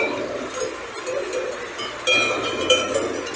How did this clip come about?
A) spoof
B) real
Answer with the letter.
B